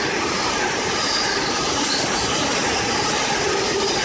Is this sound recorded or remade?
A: recorded